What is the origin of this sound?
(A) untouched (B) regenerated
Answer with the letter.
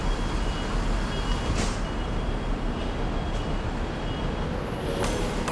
A